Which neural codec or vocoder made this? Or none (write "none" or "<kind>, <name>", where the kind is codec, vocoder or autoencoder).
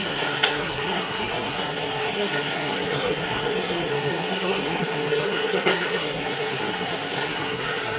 codec, SNAC